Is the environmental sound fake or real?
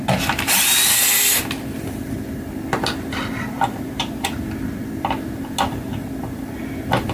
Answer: real